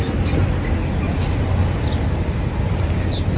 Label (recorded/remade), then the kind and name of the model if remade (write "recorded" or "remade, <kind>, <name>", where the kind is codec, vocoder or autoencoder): recorded